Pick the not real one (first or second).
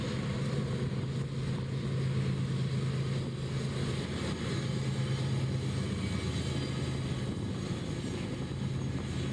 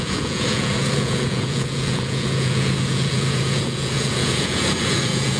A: second